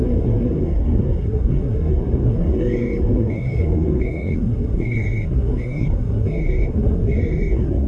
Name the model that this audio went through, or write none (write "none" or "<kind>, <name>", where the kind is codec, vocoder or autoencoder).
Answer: codec, SNAC